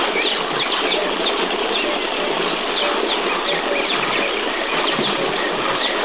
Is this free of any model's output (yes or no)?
yes